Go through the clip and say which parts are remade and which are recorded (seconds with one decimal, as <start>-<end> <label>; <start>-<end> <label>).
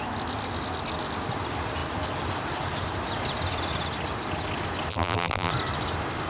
0.0-4.9 recorded; 4.9-5.5 remade; 5.5-6.3 recorded